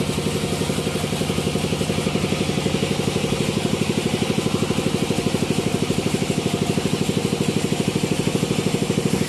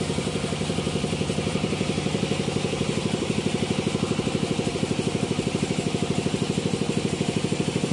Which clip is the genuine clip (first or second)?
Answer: first